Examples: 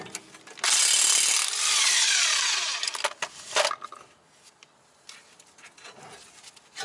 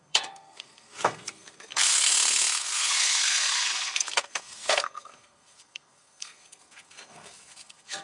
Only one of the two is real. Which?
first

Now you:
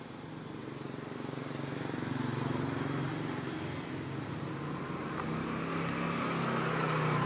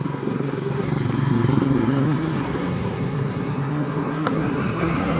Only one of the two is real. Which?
first